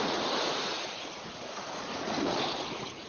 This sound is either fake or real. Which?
fake